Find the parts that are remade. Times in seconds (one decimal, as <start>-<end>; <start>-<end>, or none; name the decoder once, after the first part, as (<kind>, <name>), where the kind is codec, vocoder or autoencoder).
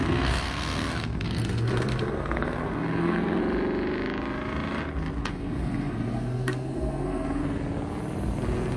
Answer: 0.0-3.4 (codec, SNAC); 5.2-7.4